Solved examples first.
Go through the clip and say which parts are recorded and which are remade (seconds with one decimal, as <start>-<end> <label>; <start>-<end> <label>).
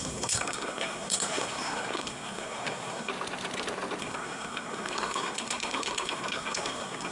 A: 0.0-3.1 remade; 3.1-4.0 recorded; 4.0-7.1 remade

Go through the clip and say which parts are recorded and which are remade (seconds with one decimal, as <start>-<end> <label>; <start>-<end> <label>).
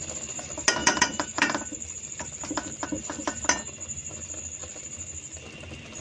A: 0.0-0.8 recorded; 0.8-3.4 remade; 3.4-6.0 recorded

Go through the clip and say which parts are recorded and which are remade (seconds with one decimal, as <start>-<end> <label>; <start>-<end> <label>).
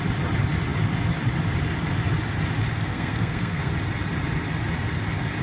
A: 0.0-2.7 recorded; 2.7-3.7 remade; 3.7-5.4 recorded